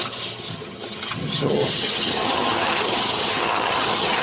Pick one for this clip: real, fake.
fake